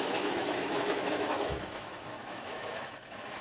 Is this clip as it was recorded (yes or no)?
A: no